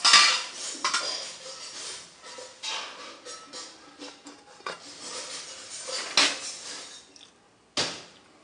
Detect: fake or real real